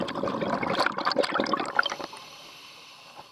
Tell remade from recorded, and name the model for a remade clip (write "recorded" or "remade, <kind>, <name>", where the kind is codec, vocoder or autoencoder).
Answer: remade, vocoder, BigVGAN v2